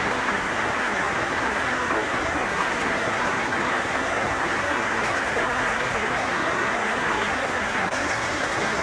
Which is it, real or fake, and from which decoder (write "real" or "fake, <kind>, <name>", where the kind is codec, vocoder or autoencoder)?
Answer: fake, codec, SNAC